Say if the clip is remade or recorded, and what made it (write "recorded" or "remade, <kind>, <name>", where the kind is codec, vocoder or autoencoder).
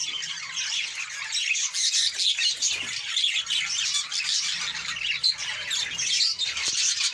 recorded